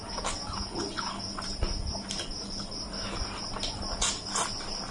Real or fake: real